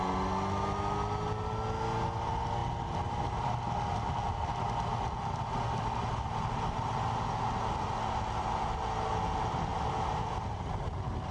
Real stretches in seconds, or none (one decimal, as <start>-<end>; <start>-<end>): 0.0-11.3